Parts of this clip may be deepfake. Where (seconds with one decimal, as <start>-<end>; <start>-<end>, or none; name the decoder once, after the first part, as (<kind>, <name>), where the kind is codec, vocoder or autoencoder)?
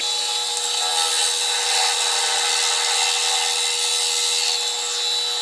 none